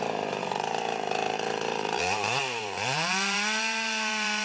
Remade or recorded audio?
remade